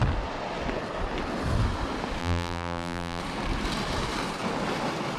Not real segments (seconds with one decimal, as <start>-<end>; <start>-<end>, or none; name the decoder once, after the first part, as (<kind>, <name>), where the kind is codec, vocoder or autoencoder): 2.2-3.2 (vocoder, BigVGAN v2)